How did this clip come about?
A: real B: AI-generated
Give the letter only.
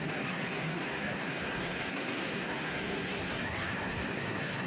B